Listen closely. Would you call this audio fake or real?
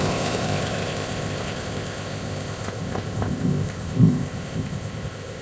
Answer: fake